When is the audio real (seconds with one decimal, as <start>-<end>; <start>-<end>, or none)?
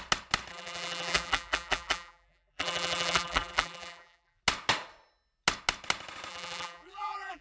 0.0-0.5; 4.4-6.3